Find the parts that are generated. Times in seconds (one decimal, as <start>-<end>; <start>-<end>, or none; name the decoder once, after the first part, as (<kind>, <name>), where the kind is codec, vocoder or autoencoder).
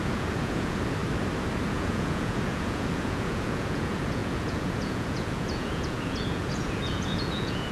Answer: 0.0-1.0 (vocoder, Vocos); 1.6-7.7